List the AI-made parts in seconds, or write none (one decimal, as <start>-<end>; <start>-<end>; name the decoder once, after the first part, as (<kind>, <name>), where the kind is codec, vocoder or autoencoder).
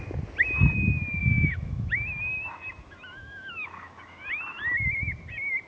1.2-4.6 (autoencoder, DAC-VAE)